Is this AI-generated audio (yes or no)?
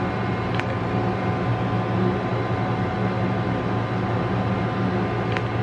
no